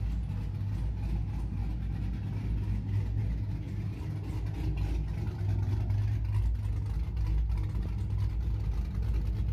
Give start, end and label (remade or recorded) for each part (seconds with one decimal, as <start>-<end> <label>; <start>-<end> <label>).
0.0-9.5 recorded